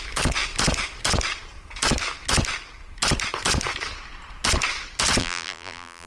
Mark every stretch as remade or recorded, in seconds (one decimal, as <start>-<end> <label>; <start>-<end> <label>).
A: 0.0-5.2 recorded; 5.2-6.1 remade